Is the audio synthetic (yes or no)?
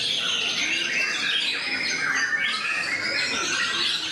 no